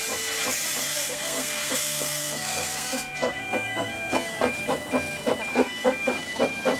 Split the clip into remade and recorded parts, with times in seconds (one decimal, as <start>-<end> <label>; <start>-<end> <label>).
0.0-0.8 recorded; 0.8-4.5 remade; 4.5-5.5 recorded; 5.5-6.1 remade; 6.1-6.8 recorded